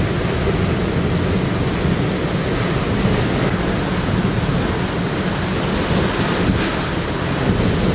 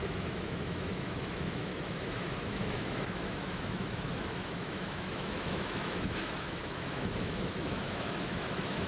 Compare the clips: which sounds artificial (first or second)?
second